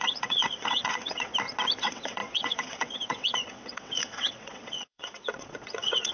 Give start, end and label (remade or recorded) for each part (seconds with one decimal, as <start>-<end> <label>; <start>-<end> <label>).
0.0-1.3 remade; 1.3-1.8 recorded; 1.8-6.1 remade